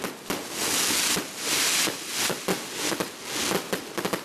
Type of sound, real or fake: real